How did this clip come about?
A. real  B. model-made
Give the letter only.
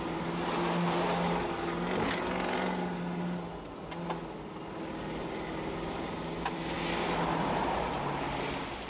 A